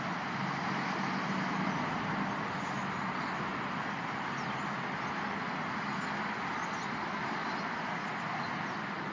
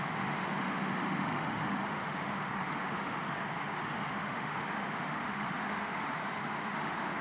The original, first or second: first